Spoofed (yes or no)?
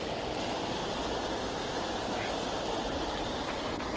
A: no